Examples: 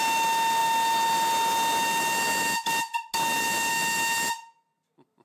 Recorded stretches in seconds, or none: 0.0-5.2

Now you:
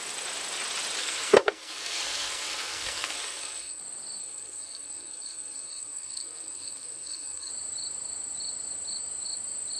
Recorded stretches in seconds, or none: 0.0-1.0; 3.8-4.2; 7.5-9.8

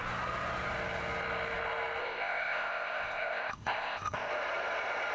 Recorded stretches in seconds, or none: 0.0-2.0; 4.3-5.1

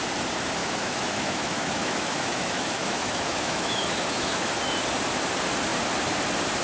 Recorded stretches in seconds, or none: 0.0-0.6; 4.6-6.6

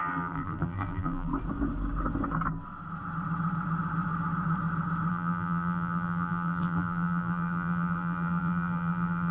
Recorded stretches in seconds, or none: 1.3-5.1